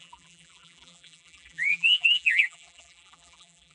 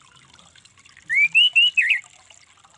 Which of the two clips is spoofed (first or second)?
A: first